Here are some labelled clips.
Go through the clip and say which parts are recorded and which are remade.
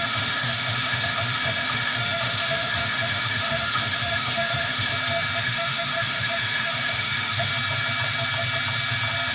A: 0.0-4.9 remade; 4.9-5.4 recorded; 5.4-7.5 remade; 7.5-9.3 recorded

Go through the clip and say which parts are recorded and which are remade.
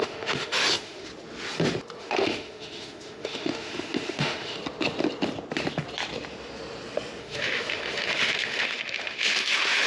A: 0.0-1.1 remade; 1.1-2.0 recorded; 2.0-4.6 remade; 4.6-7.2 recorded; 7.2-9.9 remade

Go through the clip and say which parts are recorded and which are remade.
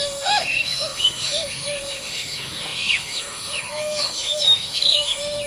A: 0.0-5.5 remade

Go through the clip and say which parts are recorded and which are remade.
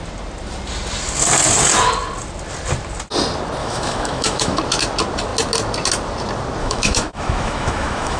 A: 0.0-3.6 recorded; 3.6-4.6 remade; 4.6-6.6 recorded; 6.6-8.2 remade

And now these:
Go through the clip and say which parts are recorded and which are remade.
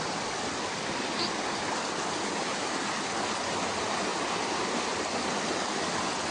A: 0.0-6.3 recorded